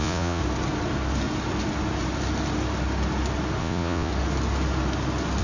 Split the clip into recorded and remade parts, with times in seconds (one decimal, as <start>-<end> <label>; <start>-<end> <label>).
0.0-0.4 remade; 0.4-3.6 recorded; 3.6-4.1 remade; 4.1-5.4 recorded